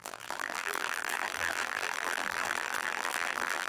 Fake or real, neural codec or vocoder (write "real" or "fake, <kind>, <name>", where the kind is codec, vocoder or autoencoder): fake, vocoder, BigVGAN v2